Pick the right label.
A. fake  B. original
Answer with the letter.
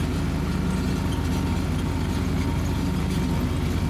B